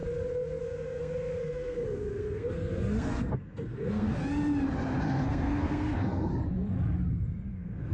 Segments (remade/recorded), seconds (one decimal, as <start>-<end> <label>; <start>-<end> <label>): 0.0-0.6 recorded; 0.6-4.2 remade; 4.2-5.1 recorded; 5.1-6.3 remade; 6.3-7.5 recorded; 7.5-7.9 remade